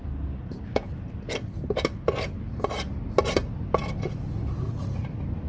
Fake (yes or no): no